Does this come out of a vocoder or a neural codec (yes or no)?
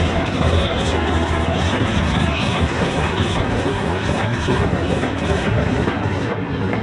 yes